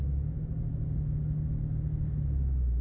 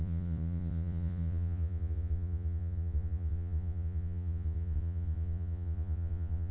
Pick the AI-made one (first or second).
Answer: second